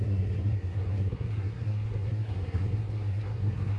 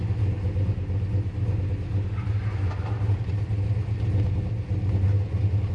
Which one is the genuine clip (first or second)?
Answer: second